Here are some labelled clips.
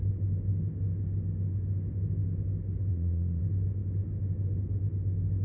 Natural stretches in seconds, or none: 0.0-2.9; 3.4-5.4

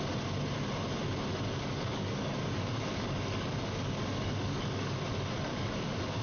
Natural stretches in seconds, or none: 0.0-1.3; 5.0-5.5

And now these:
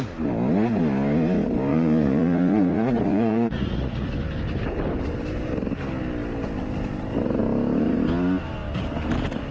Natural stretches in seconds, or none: 0.0-1.7; 4.1-9.5

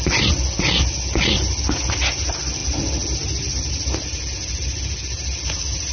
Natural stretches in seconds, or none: 0.0-5.9